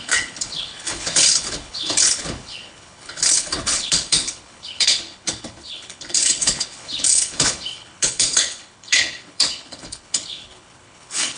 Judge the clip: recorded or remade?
remade